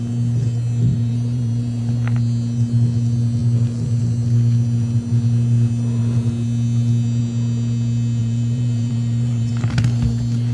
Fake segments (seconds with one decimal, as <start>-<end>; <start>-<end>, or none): 0.9-1.9; 8.2-9.5